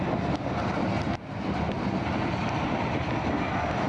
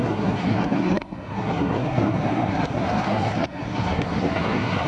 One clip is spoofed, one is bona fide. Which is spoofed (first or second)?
second